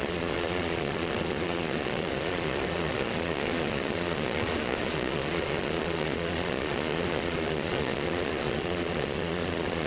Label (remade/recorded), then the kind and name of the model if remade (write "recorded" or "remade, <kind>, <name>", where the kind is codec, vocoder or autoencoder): remade, vocoder, Vocos